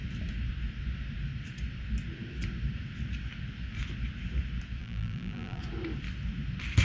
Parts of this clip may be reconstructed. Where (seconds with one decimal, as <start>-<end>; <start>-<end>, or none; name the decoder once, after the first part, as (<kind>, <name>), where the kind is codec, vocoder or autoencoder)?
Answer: 4.8-5.6 (vocoder, BigVGAN v2)